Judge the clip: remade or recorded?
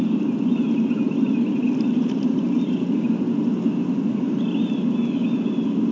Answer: recorded